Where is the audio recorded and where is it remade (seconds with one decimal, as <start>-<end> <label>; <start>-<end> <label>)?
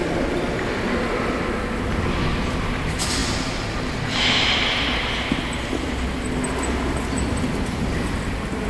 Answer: 0.0-8.7 recorded